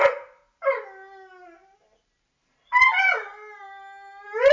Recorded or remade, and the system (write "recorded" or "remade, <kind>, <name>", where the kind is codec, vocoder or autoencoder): recorded